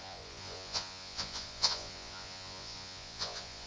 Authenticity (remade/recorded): remade